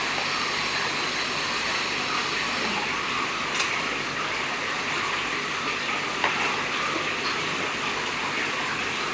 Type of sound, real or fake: real